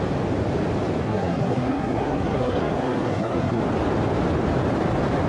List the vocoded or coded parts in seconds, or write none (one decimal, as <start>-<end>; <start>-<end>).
1.0-3.6